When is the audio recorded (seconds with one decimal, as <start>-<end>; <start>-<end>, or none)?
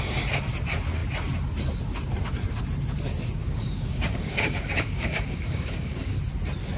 0.0-3.4; 6.2-6.8